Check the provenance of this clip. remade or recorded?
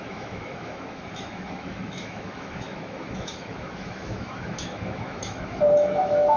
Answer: remade